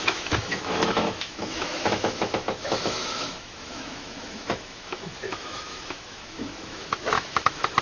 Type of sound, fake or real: fake